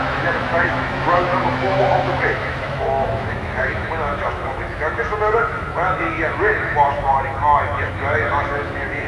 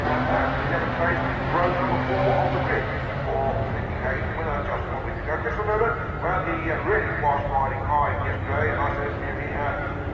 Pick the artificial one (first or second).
first